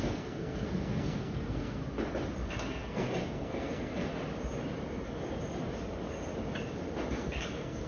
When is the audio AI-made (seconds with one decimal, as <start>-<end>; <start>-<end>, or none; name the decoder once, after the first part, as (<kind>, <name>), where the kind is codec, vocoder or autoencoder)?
0.0-1.8 (codec, SNAC); 2.4-4.1; 7.1-7.9